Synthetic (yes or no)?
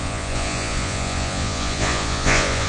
yes